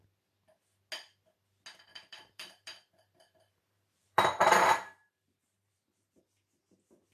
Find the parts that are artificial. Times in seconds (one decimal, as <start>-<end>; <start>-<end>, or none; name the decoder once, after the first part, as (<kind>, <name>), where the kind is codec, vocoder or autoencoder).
1.9-6.2 (vocoder, BigVGAN v2)